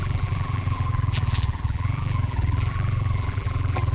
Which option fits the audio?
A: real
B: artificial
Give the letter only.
B